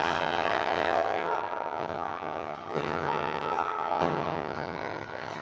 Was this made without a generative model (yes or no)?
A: no